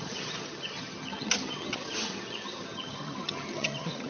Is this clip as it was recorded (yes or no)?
no